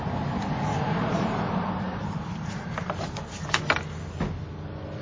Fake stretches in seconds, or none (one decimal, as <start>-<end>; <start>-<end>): 0.7-3.7